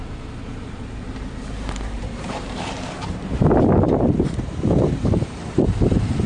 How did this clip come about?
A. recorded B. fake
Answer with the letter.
B